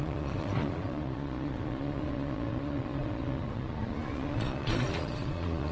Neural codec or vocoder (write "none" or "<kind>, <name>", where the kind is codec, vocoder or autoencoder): vocoder, Vocos